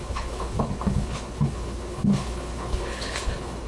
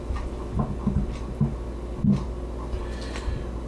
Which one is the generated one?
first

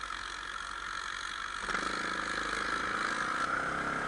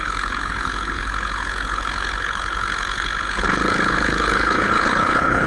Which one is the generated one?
second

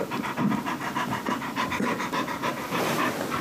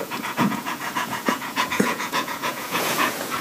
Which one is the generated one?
second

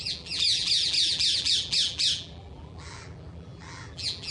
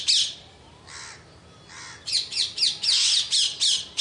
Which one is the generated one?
first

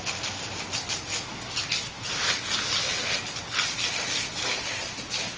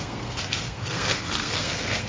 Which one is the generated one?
second